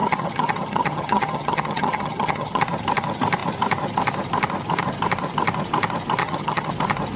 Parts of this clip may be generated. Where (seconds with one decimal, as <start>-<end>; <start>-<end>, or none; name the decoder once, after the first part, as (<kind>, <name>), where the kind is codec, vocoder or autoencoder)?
0.0-2.6 (vocoder, HiFi-GAN); 6.2-6.7